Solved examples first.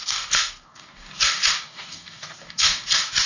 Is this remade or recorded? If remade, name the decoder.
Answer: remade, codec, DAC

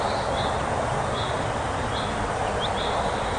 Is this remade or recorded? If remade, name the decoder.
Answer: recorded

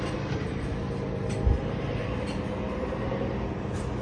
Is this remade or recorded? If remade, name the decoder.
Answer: recorded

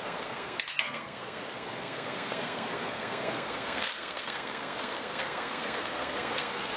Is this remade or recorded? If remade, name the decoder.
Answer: remade, codec, SNAC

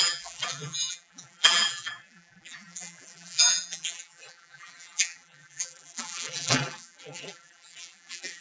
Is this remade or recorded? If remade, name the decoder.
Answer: remade, vocoder, BigVGAN v2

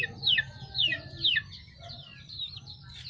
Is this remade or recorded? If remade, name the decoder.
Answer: recorded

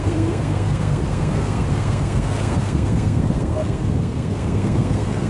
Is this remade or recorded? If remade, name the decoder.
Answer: remade, codec, SNAC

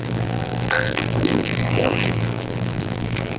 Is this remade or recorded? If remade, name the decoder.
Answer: remade, vocoder, BigVGAN v2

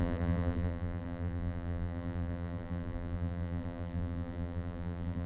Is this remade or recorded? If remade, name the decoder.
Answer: remade, vocoder, BigVGAN v2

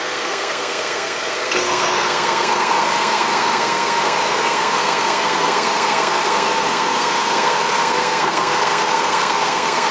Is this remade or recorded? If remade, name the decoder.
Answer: remade, codec, SNAC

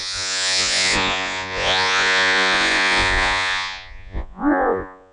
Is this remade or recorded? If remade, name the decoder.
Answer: remade, vocoder, Vocos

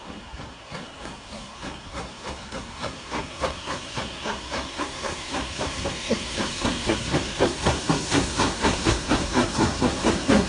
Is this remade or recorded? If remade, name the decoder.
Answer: remade, codec, SNAC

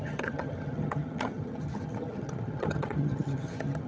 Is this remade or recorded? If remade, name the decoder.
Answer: remade, vocoder, HiFi-GAN